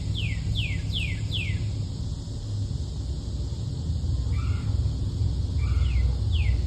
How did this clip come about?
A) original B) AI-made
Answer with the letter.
A